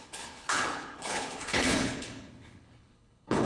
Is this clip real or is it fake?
fake